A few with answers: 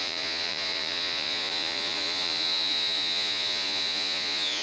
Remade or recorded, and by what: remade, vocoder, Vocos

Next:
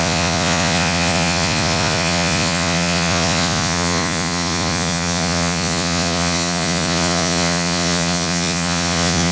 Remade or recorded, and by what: remade, vocoder, Vocos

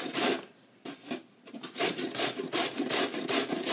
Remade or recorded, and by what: recorded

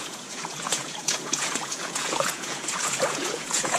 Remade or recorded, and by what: remade, vocoder, Vocos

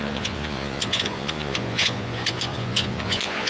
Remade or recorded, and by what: remade, vocoder, Vocos